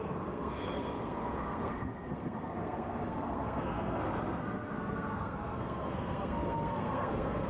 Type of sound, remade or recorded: remade